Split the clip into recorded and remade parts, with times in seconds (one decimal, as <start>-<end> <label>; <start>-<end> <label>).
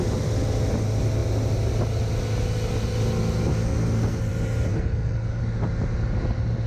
0.0-3.5 recorded; 3.5-4.3 remade; 4.3-4.7 recorded; 4.7-5.4 remade; 5.4-6.7 recorded